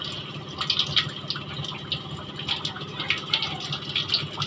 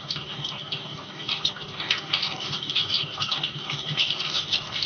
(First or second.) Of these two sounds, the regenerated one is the second